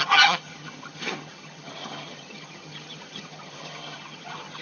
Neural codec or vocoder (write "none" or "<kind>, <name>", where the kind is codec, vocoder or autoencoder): vocoder, HiFi-GAN